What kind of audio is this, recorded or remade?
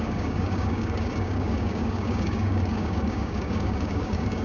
remade